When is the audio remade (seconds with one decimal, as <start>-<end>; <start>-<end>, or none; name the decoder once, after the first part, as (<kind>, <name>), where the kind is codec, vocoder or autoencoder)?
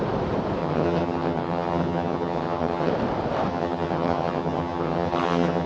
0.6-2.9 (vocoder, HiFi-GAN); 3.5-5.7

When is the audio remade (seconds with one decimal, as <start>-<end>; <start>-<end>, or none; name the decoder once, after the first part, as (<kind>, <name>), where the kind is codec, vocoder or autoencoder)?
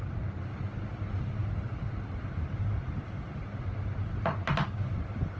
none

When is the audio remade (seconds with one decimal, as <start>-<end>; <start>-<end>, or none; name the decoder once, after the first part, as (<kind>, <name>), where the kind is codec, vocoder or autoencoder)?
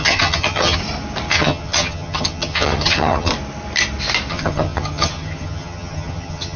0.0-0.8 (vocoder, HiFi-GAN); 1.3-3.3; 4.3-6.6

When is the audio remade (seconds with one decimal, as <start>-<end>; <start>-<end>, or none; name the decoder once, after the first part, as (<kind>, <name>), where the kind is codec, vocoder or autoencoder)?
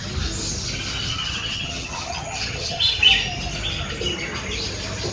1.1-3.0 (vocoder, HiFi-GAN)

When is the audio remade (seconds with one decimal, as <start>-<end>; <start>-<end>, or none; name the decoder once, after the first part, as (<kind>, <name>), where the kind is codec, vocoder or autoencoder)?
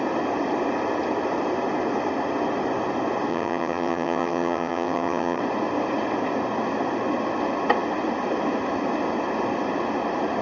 3.3-5.4 (vocoder, HiFi-GAN)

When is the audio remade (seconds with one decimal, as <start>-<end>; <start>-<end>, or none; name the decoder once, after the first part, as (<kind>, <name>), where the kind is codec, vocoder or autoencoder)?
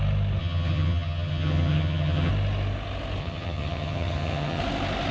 0.4-2.3 (vocoder, HiFi-GAN); 3.2-4.6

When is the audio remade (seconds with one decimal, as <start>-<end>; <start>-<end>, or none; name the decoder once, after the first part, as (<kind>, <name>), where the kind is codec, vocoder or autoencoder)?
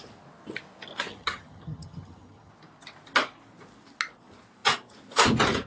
1.1-2.5 (vocoder, HiFi-GAN)